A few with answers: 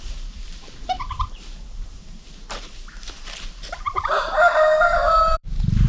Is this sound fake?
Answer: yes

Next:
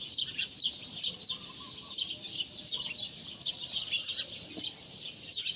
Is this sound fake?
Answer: no